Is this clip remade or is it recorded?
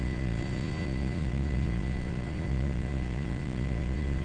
remade